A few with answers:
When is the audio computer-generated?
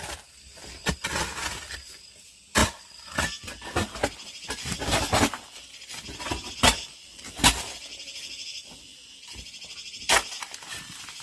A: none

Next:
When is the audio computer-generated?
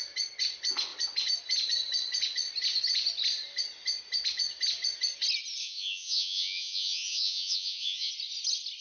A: 5.6-8.1 (vocoder, Vocos)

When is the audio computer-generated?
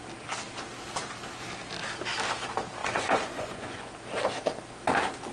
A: 2.8-3.9 (vocoder, Vocos)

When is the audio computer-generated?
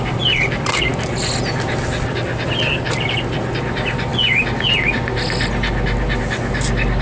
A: none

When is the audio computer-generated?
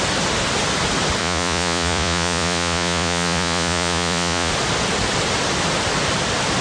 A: 1.2-4.5 (vocoder, Vocos)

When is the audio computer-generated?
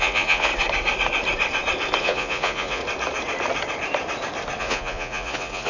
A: 0.0-0.5 (vocoder, Vocos); 2.0-2.8; 4.6-5.7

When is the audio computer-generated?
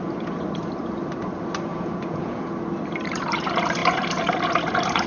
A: 1.7-2.5 (vocoder, Vocos)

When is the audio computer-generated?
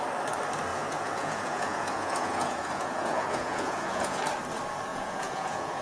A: 0.7-4.2 (vocoder, Vocos); 4.9-5.8